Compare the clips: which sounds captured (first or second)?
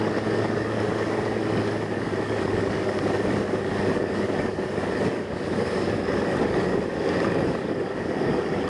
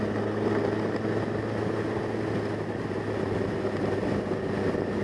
second